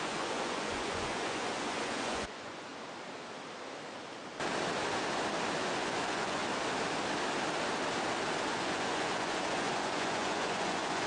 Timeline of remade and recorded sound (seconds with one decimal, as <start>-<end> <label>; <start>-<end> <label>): 0.0-2.7 remade; 2.7-5.6 recorded; 5.6-6.4 remade; 6.4-8.5 recorded; 8.5-11.1 remade